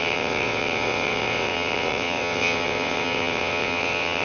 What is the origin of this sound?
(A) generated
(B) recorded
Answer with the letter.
A